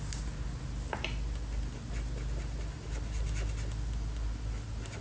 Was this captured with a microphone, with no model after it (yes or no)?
yes